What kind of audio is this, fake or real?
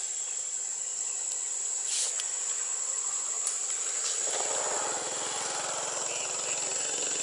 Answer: real